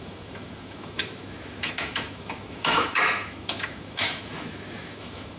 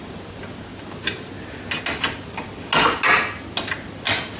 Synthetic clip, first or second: first